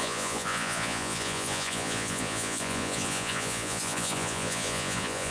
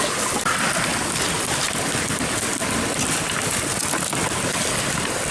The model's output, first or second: first